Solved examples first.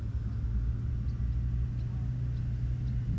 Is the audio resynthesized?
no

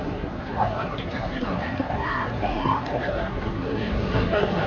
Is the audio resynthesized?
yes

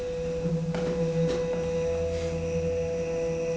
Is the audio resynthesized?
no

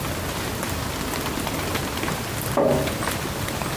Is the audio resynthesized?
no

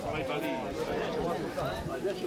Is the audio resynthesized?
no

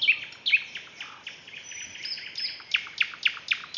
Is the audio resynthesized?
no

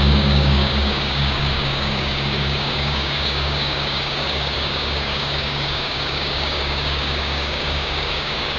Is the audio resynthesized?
yes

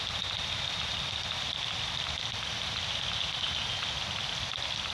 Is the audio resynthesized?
no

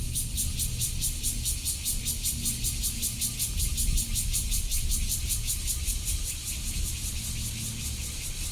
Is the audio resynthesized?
no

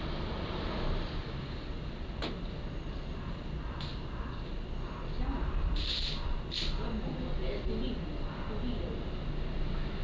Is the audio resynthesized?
no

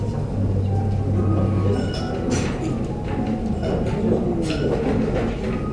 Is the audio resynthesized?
no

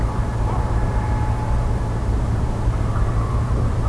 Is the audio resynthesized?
yes